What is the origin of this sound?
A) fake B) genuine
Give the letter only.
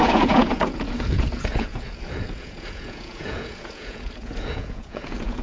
A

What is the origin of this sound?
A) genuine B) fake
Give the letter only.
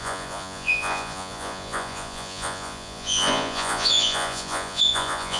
B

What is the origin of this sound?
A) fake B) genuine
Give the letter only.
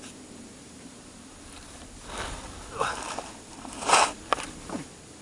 B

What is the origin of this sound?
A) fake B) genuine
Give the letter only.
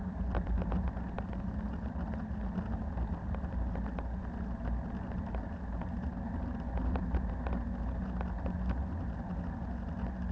B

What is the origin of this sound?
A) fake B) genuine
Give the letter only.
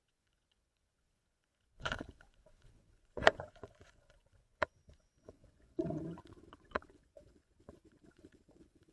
A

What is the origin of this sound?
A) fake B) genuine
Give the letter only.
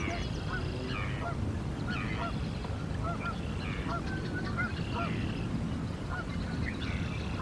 B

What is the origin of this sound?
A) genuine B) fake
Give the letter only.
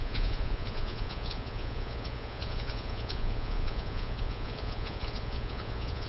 B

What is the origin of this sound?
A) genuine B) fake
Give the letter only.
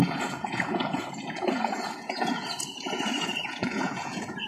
B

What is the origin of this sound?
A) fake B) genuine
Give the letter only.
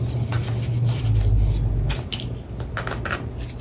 B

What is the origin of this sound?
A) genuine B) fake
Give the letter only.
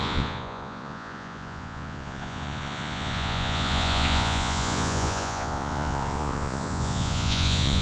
B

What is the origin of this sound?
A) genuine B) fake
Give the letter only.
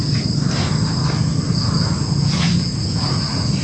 A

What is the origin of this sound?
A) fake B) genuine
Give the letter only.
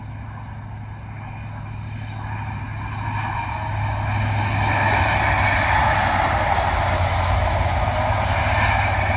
B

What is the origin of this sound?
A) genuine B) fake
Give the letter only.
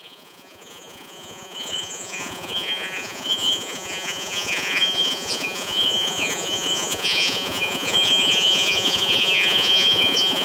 B